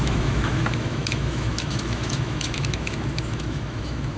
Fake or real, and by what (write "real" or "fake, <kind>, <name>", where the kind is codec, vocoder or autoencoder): fake, autoencoder, DAC-VAE